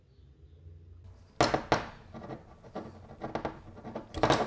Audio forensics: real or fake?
real